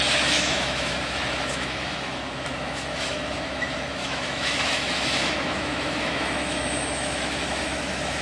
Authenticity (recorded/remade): remade